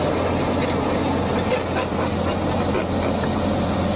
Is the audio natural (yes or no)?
yes